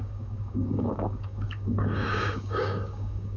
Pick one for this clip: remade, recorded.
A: remade